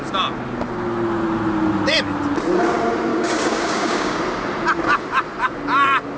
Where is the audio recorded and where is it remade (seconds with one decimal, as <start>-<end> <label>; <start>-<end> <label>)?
0.0-3.1 recorded; 3.1-4.2 remade; 4.2-6.2 recorded